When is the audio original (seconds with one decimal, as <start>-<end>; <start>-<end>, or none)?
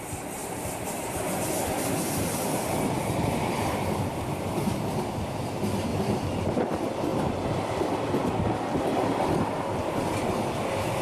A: 0.0-0.4; 4.7-5.9; 6.6-11.0